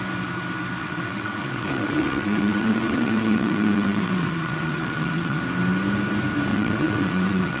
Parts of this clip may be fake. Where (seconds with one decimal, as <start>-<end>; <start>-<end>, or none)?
0.8-5.4; 6.5-7.6